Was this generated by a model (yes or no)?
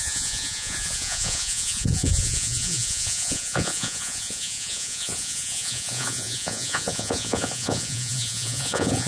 yes